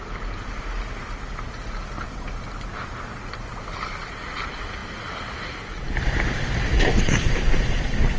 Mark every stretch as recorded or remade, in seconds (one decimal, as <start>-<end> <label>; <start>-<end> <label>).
0.0-8.2 recorded